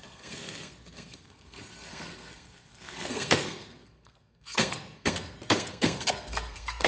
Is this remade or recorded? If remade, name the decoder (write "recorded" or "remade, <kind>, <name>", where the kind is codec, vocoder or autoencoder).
remade, codec, SNAC